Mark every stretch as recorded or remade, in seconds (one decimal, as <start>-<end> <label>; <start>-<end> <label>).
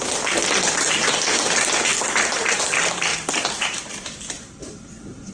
0.0-5.3 recorded